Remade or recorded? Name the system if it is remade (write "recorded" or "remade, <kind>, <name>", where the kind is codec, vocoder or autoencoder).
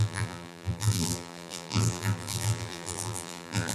remade, vocoder, BigVGAN v2